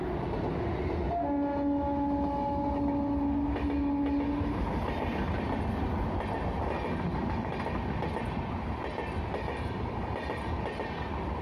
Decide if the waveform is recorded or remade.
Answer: recorded